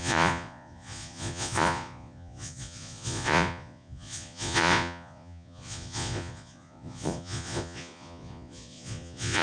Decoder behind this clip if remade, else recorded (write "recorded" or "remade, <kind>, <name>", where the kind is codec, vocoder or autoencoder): remade, vocoder, Vocos